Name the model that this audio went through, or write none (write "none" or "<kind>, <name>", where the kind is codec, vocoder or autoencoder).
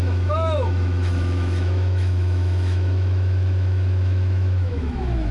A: autoencoder, DAC-VAE